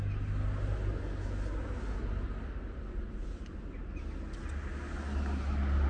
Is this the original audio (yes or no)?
yes